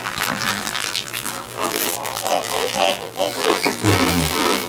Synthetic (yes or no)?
yes